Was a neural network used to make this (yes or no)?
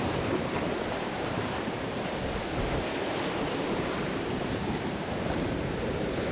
yes